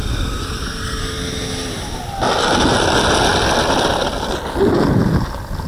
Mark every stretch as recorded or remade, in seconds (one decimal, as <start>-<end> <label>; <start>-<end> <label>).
0.0-1.0 remade; 1.0-5.7 recorded